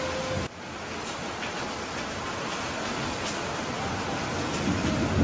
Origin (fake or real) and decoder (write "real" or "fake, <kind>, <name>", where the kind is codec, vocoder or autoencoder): real